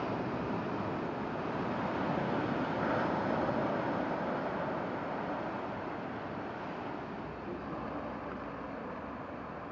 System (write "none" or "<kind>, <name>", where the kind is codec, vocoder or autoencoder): none